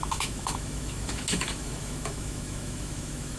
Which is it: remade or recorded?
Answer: remade